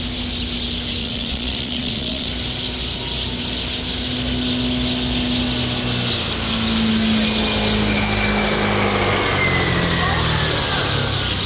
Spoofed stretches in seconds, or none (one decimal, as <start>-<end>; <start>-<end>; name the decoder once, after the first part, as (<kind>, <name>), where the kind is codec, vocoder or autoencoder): 1.0-2.3 (vocoder, Vocos)